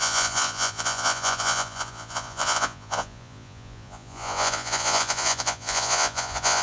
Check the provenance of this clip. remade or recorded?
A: remade